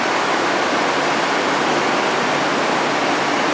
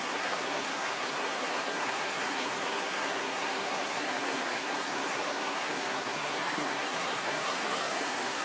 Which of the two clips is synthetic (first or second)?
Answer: second